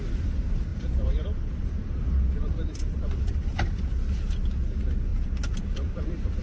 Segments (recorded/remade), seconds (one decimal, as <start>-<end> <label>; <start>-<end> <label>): 0.0-0.7 recorded; 0.7-4.5 remade; 4.5-5.1 recorded; 5.1-6.4 remade